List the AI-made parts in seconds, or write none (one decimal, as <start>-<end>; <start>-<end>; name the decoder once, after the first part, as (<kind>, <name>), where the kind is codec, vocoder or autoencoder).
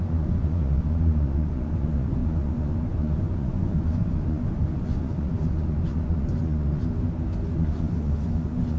0.0-6.8 (vocoder, Vocos); 7.5-8.8